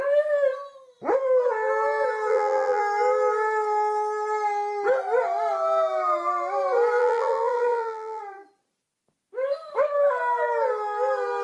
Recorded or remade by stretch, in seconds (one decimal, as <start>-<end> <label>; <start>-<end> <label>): 0.0-2.3 recorded; 2.3-2.8 remade; 2.8-7.0 recorded; 7.0-8.2 remade; 8.2-11.4 recorded